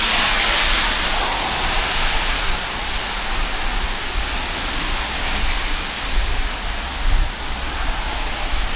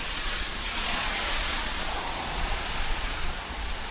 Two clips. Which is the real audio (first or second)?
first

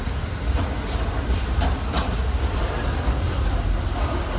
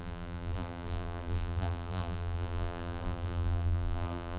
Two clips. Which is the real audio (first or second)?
first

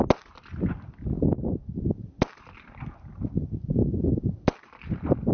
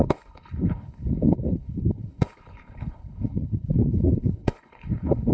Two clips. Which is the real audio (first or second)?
first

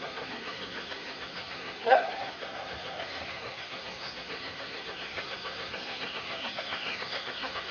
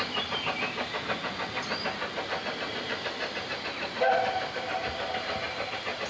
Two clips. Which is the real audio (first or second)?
second